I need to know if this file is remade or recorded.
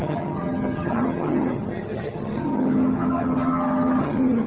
remade